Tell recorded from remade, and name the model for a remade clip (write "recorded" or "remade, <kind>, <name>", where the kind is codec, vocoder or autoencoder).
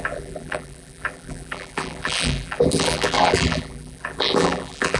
remade, vocoder, BigVGAN v2